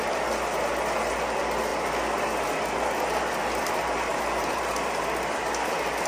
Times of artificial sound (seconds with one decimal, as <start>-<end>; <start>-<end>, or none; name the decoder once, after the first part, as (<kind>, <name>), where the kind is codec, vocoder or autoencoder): none